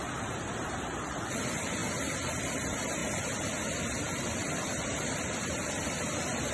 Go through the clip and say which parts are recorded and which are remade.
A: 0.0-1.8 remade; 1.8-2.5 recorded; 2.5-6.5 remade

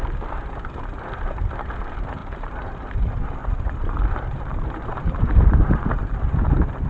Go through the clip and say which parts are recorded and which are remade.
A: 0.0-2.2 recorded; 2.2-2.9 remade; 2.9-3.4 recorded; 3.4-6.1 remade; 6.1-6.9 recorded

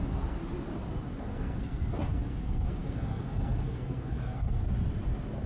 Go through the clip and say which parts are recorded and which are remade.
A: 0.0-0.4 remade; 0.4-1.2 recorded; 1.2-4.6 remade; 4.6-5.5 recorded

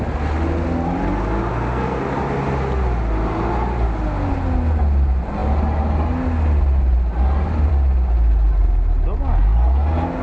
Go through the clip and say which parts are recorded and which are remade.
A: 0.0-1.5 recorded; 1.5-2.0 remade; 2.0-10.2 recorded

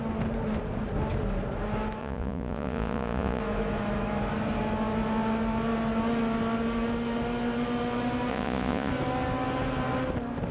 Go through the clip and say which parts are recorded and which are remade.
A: 0.0-2.0 recorded; 2.0-3.4 remade; 3.4-8.3 recorded; 8.3-8.9 remade; 8.9-10.5 recorded

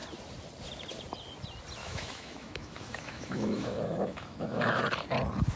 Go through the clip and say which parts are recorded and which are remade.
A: 0.0-1.8 recorded; 1.8-4.8 remade; 4.8-5.6 recorded